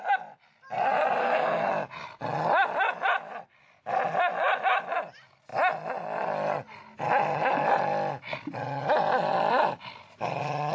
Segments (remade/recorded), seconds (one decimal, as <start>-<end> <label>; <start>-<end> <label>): 0.0-1.2 recorded; 1.2-1.7 remade; 1.7-10.7 recorded